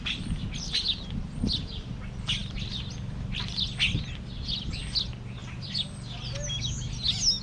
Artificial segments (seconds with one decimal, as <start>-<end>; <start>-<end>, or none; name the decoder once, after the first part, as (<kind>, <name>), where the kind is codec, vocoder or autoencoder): none